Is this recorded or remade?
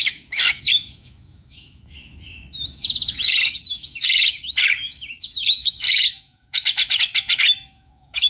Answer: remade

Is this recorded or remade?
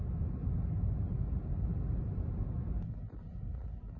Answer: recorded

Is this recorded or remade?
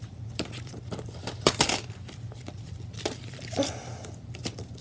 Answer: remade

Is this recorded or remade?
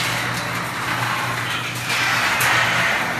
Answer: recorded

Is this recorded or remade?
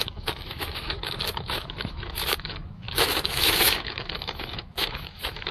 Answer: remade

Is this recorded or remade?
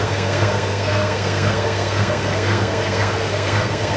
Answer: remade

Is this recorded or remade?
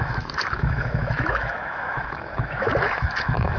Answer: remade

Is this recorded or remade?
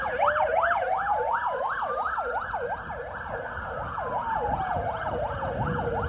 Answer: recorded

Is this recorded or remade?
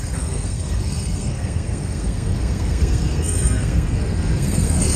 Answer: remade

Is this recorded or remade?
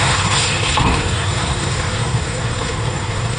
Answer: remade